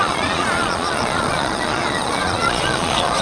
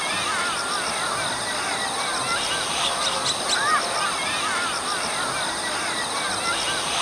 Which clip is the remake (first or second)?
first